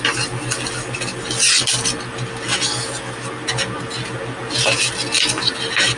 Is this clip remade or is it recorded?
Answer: recorded